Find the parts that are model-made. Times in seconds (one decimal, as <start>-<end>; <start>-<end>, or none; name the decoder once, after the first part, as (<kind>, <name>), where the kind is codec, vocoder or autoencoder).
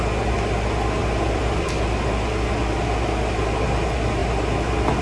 1.0-1.7 (vocoder, BigVGAN v2)